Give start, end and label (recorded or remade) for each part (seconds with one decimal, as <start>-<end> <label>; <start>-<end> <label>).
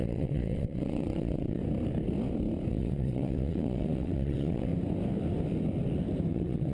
0.0-1.6 remade; 1.6-2.7 recorded; 2.7-4.7 remade; 4.7-6.3 recorded; 6.3-6.7 remade